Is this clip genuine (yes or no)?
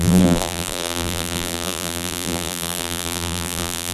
no